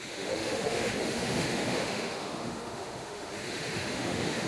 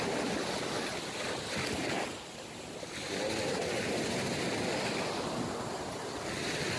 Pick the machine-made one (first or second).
first